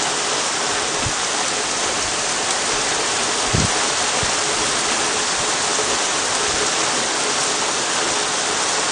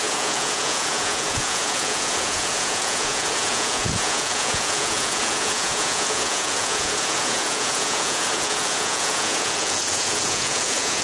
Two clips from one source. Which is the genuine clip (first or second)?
first